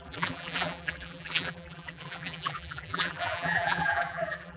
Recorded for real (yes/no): no